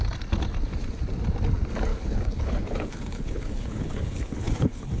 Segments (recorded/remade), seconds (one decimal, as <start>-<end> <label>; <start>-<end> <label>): 0.0-1.9 recorded; 1.9-5.0 remade